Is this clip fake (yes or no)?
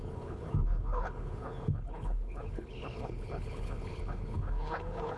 yes